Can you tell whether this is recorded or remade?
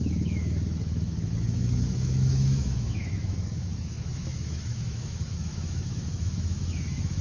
remade